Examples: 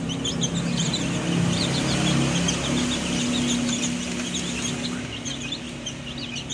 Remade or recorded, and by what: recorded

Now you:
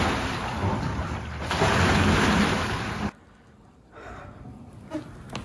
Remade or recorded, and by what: recorded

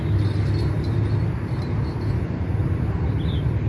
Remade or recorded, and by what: recorded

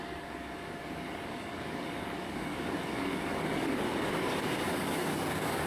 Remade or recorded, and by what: remade, codec, DAC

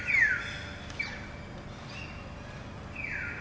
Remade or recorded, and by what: recorded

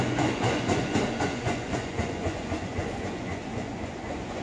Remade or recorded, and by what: remade, vocoder, Vocos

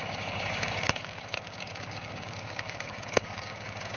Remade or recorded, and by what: remade, codec, DAC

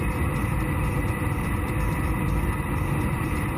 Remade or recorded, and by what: remade, vocoder, BigVGAN v2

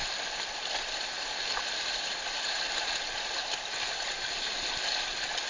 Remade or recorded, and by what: recorded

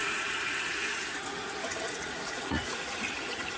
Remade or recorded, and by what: remade, vocoder, Vocos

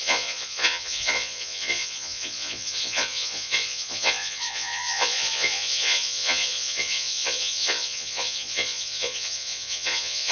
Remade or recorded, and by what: remade, vocoder, Vocos